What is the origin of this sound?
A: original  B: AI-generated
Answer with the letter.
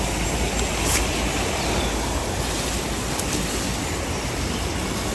A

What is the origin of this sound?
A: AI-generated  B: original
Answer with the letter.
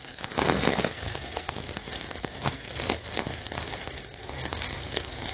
A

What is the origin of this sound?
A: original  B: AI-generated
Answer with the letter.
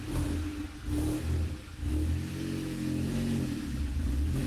A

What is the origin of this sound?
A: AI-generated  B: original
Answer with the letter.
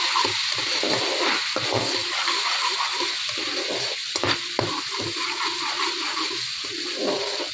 B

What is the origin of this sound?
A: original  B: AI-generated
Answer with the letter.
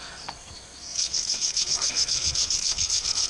B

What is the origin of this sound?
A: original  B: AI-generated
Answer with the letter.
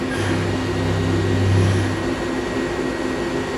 A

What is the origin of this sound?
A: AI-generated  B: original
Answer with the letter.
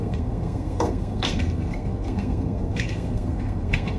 A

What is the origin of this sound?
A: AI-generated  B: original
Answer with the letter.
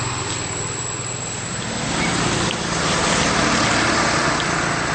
B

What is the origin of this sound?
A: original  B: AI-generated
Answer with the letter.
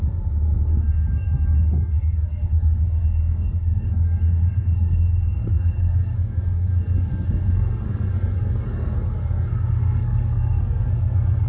B